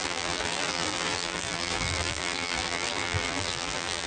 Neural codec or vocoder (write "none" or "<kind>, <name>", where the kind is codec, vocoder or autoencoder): vocoder, BigVGAN v2